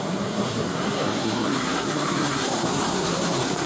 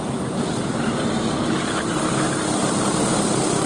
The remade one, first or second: first